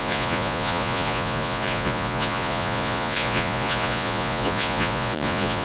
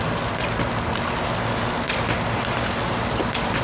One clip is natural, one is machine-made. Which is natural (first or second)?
second